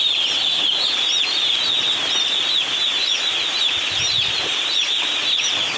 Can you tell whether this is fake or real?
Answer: real